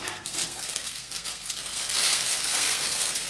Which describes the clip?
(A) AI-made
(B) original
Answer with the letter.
A